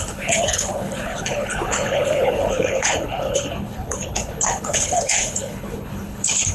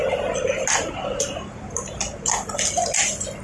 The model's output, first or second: first